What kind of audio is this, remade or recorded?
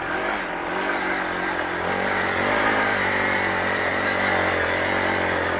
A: recorded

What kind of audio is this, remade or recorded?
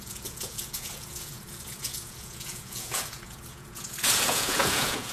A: remade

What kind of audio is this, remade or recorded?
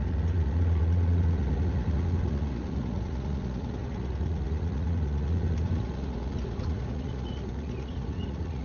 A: remade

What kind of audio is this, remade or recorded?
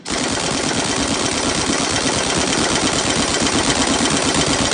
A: recorded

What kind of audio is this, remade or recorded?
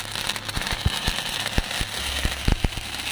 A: recorded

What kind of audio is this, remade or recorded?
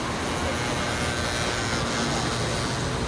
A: recorded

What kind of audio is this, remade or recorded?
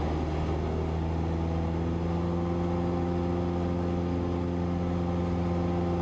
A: recorded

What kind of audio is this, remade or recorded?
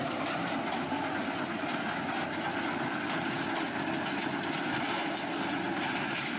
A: recorded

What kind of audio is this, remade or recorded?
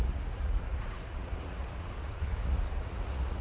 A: remade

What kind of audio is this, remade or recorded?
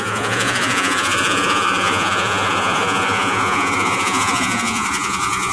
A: remade